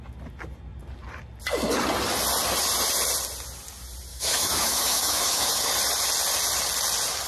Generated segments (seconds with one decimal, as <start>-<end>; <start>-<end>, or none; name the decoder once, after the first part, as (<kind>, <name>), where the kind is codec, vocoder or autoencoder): 4.1-5.7 (autoencoder, DAC-VAE)